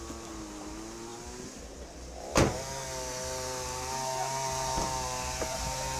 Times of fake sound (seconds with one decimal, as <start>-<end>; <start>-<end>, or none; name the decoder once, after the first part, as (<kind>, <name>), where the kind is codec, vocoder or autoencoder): none